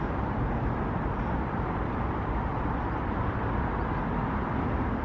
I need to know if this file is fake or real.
real